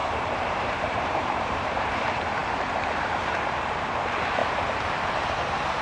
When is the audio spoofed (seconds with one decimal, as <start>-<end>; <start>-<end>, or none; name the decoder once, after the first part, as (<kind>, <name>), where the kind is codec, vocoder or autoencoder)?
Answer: 0.0-5.8 (vocoder, BigVGAN v2)